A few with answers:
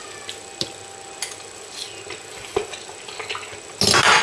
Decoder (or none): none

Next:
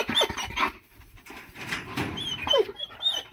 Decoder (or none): vocoder, BigVGAN v2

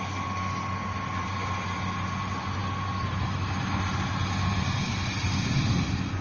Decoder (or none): none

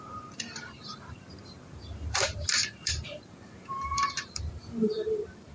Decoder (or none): vocoder, BigVGAN v2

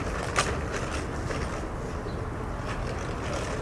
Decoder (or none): none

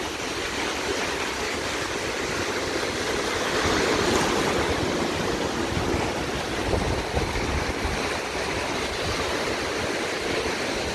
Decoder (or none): none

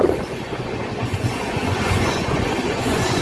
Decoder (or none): vocoder, Vocos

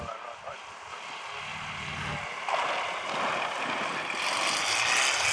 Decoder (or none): none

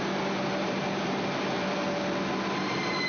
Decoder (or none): none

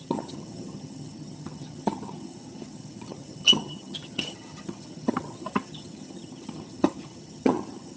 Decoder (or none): vocoder, HiFi-GAN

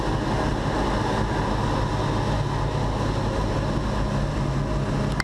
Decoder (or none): none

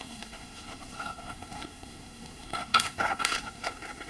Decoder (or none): codec, SNAC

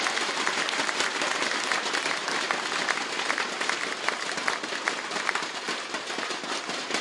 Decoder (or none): none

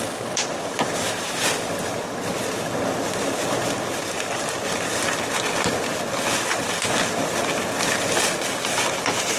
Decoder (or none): none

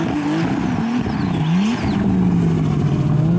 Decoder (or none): none